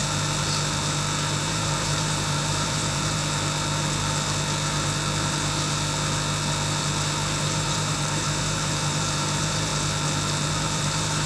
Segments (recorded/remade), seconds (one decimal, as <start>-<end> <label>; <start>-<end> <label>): 0.0-1.4 recorded; 1.4-3.2 remade; 3.2-7.4 recorded; 7.4-9.7 remade; 9.7-10.5 recorded; 10.5-11.3 remade